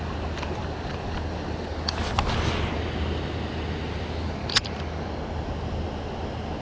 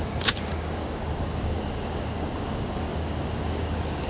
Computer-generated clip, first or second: second